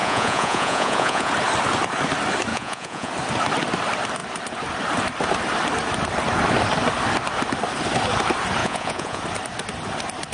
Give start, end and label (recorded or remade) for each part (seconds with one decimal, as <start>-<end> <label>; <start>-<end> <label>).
0.0-1.3 remade; 1.3-2.5 recorded; 2.5-3.1 remade; 3.1-8.6 recorded; 8.6-9.2 remade; 9.2-10.3 recorded